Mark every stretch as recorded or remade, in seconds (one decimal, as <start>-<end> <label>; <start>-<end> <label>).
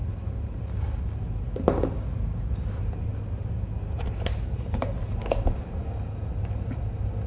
0.0-7.3 recorded